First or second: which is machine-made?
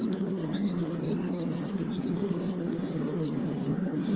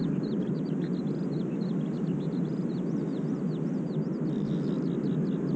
first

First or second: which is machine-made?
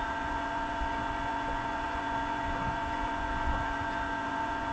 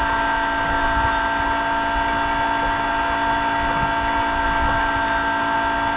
first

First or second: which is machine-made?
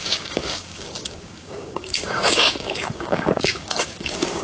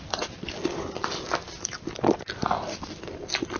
first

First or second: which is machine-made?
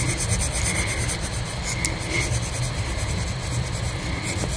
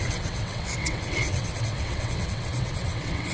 second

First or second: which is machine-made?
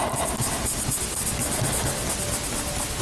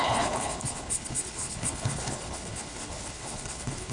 second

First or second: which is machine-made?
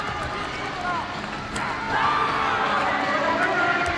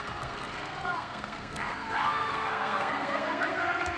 second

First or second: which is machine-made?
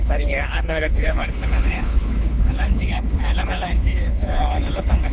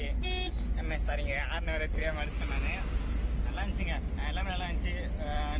first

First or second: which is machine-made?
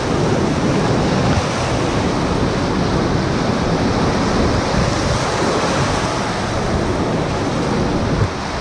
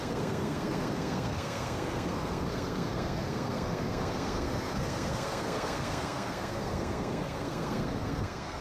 second